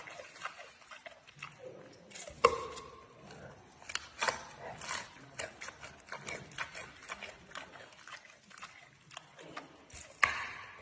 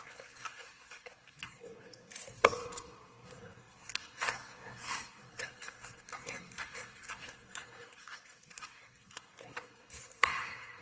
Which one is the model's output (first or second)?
second